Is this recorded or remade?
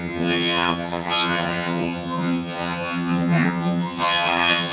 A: remade